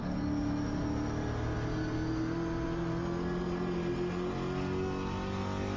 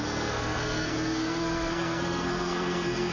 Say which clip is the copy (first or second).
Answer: second